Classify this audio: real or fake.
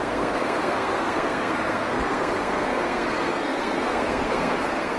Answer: fake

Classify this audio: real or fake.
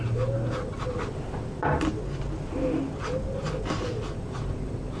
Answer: real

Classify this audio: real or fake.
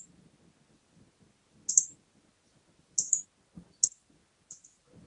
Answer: real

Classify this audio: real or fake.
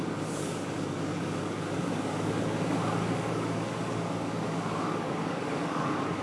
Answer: fake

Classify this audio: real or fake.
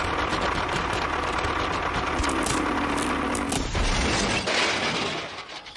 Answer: real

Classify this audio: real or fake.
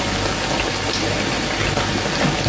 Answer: real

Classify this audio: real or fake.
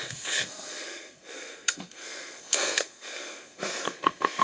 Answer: fake